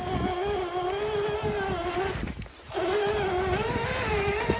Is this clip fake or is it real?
real